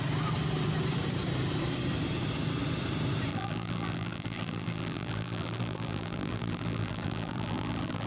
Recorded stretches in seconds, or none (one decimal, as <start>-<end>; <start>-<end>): 0.0-3.3